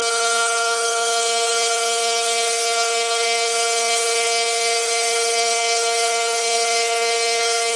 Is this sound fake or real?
fake